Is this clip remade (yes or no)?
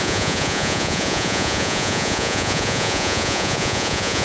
yes